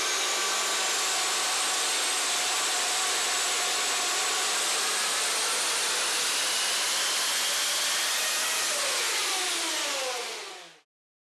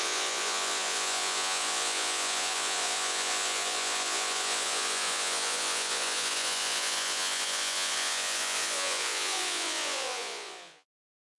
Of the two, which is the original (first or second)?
first